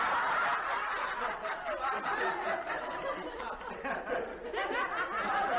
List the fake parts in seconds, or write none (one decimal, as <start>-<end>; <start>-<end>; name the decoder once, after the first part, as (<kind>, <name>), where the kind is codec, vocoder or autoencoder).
0.0-5.6 (vocoder, BigVGAN v2)